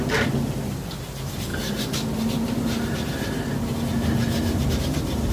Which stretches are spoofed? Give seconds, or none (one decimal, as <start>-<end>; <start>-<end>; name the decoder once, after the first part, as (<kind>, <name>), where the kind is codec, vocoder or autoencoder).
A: none